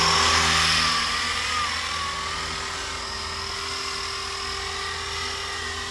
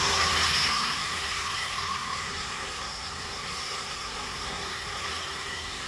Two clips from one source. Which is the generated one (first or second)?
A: second